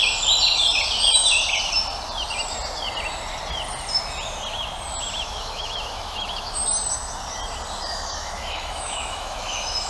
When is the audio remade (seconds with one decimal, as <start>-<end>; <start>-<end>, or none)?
5.2-6.6; 7.9-9.9